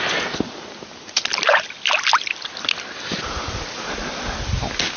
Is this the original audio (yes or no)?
yes